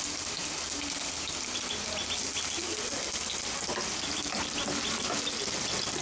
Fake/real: real